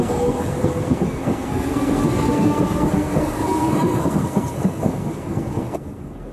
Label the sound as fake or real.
fake